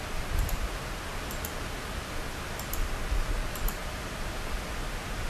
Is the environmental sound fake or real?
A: real